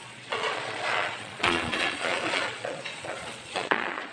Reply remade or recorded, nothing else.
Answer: remade